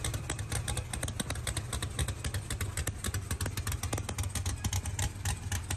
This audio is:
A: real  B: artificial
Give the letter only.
A